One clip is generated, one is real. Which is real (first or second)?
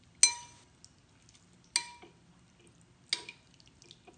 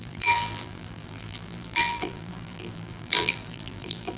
first